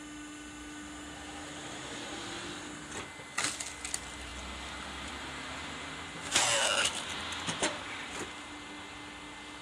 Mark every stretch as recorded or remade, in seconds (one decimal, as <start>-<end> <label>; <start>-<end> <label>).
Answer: 0.0-9.6 recorded